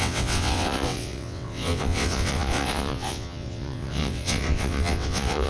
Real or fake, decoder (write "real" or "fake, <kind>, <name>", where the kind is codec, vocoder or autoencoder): fake, vocoder, WaveNeXt